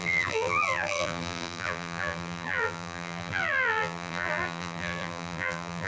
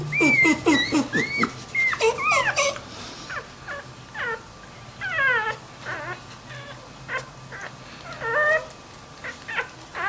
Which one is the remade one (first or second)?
first